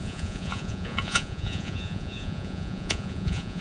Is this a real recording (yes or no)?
no